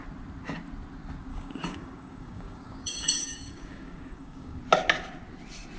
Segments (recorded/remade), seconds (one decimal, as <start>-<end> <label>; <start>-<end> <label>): 0.0-1.3 recorded; 1.3-4.6 remade; 4.6-5.8 recorded